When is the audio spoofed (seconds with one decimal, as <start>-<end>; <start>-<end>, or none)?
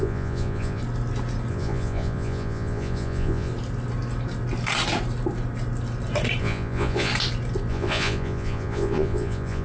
0.0-0.8; 1.5-3.5; 6.4-7.1; 7.7-9.6